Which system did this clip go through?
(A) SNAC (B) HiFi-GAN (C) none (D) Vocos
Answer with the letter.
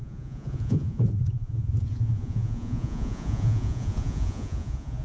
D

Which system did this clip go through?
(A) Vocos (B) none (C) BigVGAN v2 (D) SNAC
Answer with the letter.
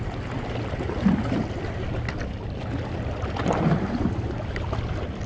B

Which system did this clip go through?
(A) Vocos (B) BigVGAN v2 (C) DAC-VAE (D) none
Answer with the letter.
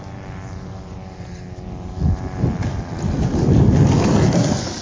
D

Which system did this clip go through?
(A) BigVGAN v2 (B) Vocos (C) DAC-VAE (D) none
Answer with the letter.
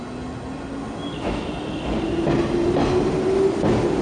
D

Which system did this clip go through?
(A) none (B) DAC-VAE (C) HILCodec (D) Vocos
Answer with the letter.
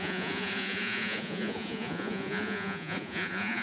D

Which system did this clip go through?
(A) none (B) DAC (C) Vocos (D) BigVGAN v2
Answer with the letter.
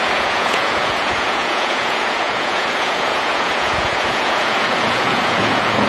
C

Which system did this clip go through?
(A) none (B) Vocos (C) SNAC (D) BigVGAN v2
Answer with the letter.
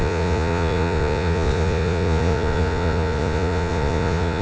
B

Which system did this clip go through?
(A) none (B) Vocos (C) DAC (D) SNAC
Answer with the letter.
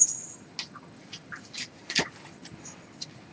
A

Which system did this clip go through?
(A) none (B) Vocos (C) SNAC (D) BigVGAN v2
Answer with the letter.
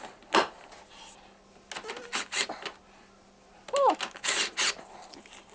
A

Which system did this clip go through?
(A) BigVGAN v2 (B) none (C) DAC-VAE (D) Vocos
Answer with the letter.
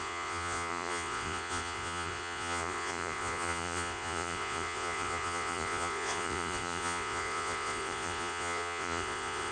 D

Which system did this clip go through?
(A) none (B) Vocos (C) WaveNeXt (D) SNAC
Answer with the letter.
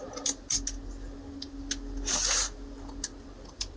A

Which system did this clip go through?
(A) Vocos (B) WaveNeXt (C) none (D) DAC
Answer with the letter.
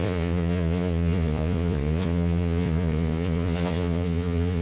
A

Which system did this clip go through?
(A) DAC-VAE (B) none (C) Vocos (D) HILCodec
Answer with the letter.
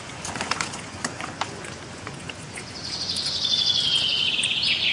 C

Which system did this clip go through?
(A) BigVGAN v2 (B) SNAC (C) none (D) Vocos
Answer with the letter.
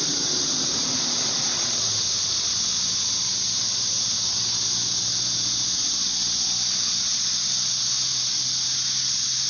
C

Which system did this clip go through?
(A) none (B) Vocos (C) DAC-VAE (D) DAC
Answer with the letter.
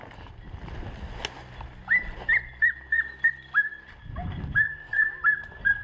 A